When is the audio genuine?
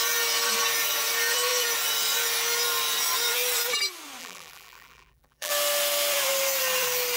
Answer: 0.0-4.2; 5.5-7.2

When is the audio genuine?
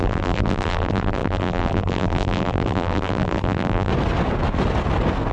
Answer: 3.9-5.3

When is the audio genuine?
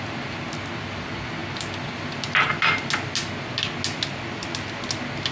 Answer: 0.0-5.3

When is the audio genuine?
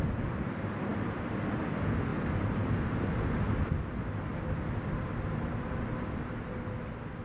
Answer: 0.0-2.1; 3.2-4.3; 5.9-7.2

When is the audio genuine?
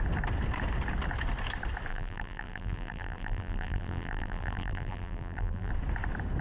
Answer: 0.0-1.9; 5.7-6.4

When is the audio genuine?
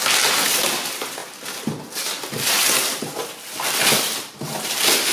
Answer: 0.0-5.1